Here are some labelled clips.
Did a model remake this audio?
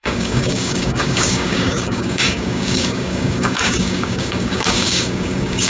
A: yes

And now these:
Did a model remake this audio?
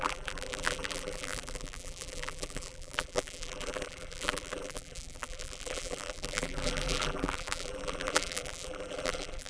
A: yes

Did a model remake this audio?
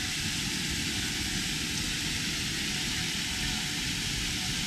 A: no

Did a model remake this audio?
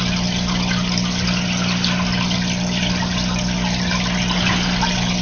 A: no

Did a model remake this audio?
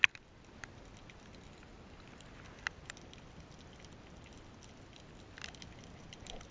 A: no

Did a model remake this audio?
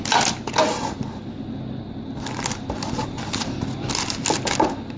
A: no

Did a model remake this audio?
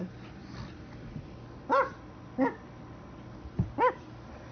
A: no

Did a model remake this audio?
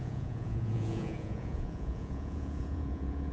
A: yes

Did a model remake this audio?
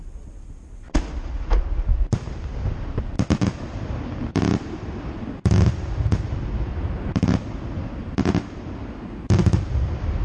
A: no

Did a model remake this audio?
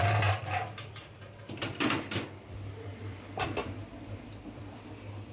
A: yes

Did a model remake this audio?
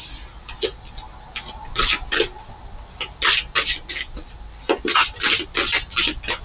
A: no